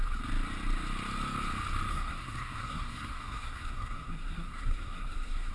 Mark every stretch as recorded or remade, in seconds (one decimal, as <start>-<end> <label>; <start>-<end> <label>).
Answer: 0.0-1.9 recorded; 1.9-5.5 remade

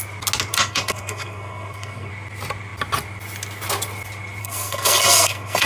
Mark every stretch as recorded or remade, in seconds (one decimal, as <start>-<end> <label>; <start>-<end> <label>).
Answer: 0.0-0.5 recorded; 0.5-2.1 remade; 2.1-4.4 recorded; 4.4-5.7 remade

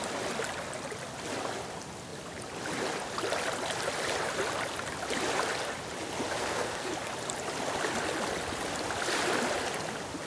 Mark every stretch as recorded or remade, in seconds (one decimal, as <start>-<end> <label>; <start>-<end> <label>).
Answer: 0.0-6.4 recorded; 6.4-6.9 remade; 6.9-10.3 recorded

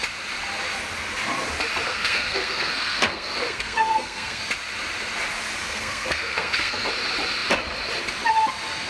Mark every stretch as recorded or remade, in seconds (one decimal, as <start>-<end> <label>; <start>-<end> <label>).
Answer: 0.0-1.9 recorded; 1.9-4.4 remade; 4.4-5.6 recorded; 5.6-6.9 remade; 6.9-8.9 recorded

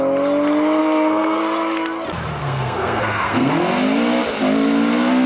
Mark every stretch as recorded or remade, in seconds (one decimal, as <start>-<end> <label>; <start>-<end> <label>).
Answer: 0.0-0.8 recorded; 0.8-1.4 remade; 1.4-2.4 recorded; 2.4-3.5 remade; 3.5-5.3 recorded

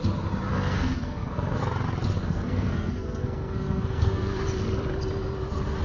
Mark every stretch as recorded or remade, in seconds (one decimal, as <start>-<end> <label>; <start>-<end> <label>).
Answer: 0.0-0.5 recorded; 0.5-1.6 remade; 1.6-2.2 recorded; 2.2-4.4 remade; 4.4-5.8 recorded